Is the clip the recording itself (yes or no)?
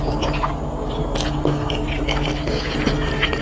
yes